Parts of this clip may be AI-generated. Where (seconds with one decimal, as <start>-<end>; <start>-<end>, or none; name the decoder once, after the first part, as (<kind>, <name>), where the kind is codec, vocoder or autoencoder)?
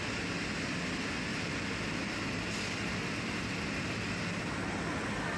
1.3-4.1 (vocoder, BigVGAN v2)